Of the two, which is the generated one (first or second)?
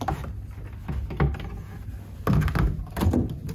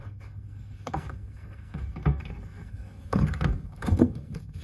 second